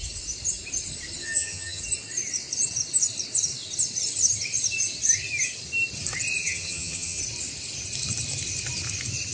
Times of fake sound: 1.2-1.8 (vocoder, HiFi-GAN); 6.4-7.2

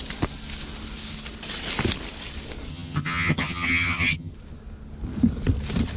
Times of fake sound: 2.7-4.3 (vocoder, HiFi-GAN)

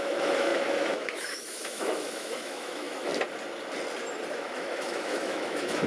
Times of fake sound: 0.0-3.1 (autoencoder, DAC-VAE); 4.3-5.9

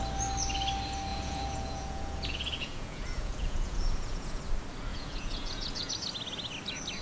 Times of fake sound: 1.1-4.4 (vocoder, Vocos); 4.9-5.9

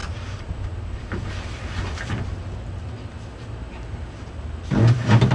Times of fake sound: 0.0-1.3 (vocoder, BigVGAN v2); 3.3-4.4

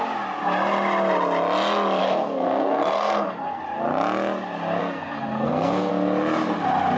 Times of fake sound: 2.0-3.6 (codec, SNAC); 4.8-5.9